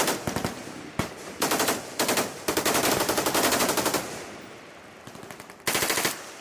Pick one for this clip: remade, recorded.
recorded